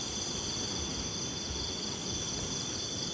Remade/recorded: recorded